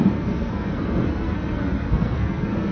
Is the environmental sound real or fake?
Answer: fake